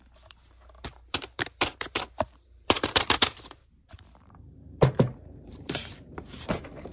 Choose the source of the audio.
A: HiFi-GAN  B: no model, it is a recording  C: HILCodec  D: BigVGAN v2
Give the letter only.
D